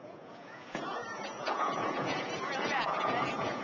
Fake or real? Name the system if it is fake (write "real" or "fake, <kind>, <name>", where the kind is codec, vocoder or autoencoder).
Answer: fake, vocoder, Vocos